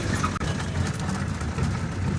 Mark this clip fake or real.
real